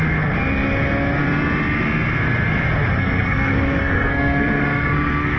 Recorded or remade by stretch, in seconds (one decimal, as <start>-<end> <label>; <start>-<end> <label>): 0.0-3.0 recorded; 3.0-5.4 remade